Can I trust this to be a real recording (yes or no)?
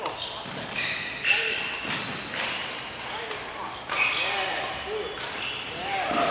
yes